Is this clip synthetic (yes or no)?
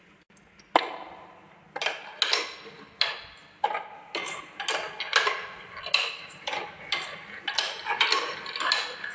no